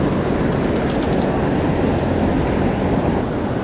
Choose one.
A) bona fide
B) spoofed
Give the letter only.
A